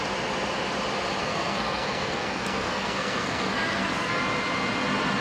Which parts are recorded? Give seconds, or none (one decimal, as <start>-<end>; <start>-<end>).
0.0-1.2; 4.2-5.2